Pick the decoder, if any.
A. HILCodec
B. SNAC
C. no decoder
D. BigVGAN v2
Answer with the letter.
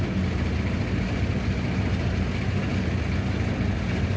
C